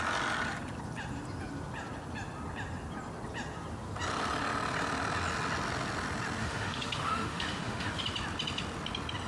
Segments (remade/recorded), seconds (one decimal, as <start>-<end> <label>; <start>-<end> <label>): 0.0-6.4 recorded; 6.4-8.0 remade; 8.0-9.3 recorded